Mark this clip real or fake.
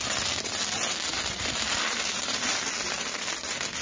real